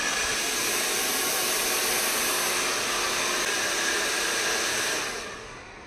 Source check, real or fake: real